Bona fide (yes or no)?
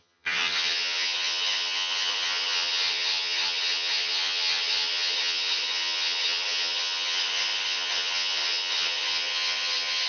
no